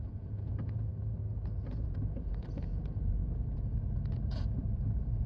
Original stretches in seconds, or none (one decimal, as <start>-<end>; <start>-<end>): 0.9-1.7

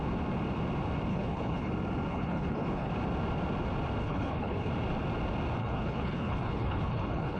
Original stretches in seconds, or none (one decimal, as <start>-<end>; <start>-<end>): 0.0-1.1; 1.7-2.1; 2.9-4.0; 4.7-5.6